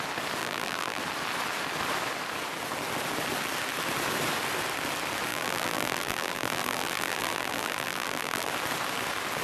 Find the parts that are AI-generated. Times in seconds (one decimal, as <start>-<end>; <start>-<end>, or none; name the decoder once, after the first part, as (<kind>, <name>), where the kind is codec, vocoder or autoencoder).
0.4-1.0 (vocoder, BigVGAN v2); 5.3-8.5